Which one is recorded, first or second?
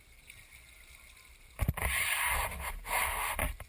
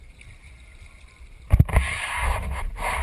first